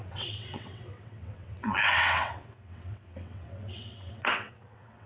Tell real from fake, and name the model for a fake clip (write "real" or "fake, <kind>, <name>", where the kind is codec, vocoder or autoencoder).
fake, vocoder, WaveNeXt